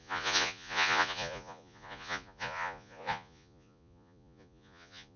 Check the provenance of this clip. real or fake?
fake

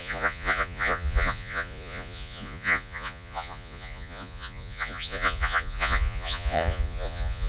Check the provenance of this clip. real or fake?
fake